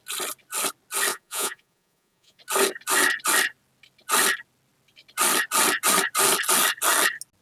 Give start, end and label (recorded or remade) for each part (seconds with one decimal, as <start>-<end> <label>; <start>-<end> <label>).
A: 0.0-1.1 recorded; 1.1-2.4 remade; 2.4-7.4 recorded